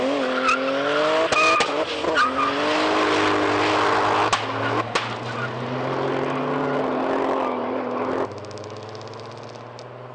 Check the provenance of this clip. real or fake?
real